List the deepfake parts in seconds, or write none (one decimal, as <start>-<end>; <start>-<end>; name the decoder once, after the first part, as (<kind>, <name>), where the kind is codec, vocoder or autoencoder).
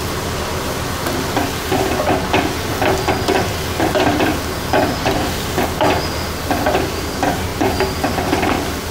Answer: 4.3-5.1 (vocoder, BigVGAN v2); 7.5-8.9